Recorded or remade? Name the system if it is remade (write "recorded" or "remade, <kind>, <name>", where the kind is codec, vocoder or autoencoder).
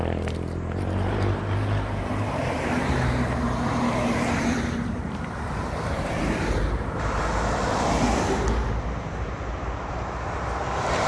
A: remade, vocoder, BigVGAN v2